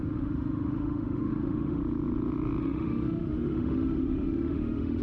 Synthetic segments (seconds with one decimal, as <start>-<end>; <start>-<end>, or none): 0.0-1.8; 2.6-5.0